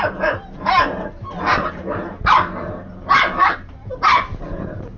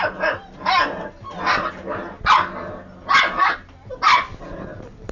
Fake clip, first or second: first